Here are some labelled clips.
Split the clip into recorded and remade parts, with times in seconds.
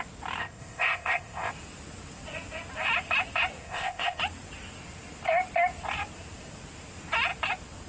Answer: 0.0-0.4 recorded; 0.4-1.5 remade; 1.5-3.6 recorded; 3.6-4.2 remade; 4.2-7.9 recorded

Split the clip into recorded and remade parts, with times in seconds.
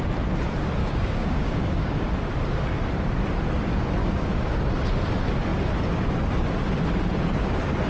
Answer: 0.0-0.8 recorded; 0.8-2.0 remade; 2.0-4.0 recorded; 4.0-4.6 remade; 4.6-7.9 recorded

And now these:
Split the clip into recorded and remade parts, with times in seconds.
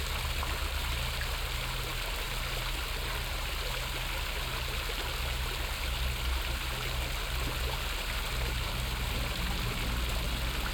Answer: 0.0-10.7 recorded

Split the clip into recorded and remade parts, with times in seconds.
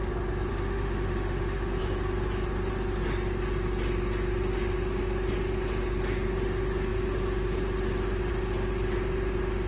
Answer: 0.0-0.5 recorded; 0.5-1.8 remade; 1.8-9.7 recorded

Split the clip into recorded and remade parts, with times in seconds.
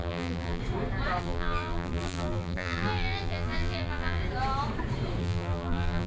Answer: 0.0-0.6 remade; 0.6-1.2 recorded; 1.2-4.2 remade; 4.2-5.2 recorded; 5.2-6.1 remade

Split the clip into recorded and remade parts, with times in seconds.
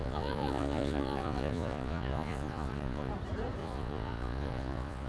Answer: 0.0-3.1 remade; 3.1-3.6 recorded; 3.6-5.1 remade